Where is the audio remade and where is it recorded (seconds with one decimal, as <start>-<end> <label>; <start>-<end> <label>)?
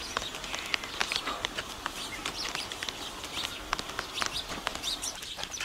0.0-4.7 recorded; 4.7-5.6 remade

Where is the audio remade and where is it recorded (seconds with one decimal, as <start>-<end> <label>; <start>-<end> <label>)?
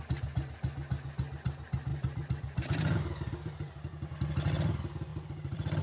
0.0-1.9 recorded; 1.9-4.3 remade; 4.3-5.1 recorded; 5.1-5.8 remade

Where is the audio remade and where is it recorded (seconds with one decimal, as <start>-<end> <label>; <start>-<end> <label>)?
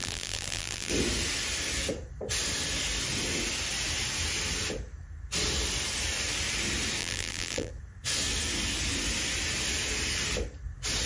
0.0-0.9 remade; 0.9-7.0 recorded; 7.0-7.7 remade; 7.7-11.1 recorded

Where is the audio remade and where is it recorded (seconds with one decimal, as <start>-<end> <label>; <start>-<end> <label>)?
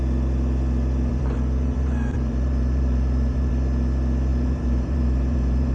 0.0-1.1 recorded; 1.1-3.5 remade; 3.5-4.3 recorded; 4.3-5.7 remade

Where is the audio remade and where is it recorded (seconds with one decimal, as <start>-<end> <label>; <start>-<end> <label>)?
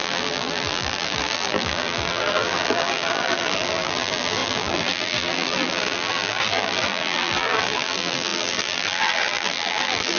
0.0-10.2 remade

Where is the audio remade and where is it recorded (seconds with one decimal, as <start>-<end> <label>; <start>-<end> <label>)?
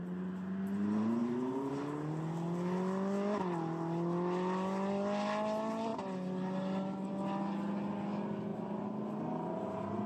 0.0-1.2 recorded; 1.2-1.7 remade; 1.7-8.5 recorded; 8.5-9.0 remade; 9.0-10.1 recorded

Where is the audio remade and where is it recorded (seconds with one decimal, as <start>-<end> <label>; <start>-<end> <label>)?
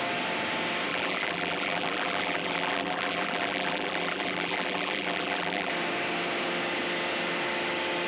0.0-0.9 recorded; 0.9-5.7 remade; 5.7-8.1 recorded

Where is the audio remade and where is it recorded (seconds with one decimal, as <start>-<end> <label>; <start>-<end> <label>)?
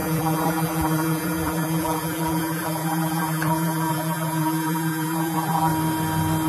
0.0-5.7 remade; 5.7-6.5 recorded